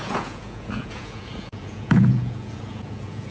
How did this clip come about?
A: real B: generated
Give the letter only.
B